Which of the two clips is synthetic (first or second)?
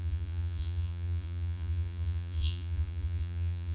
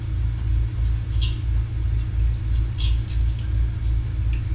first